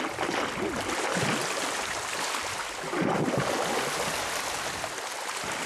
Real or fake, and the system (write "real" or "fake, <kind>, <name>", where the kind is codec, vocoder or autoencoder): real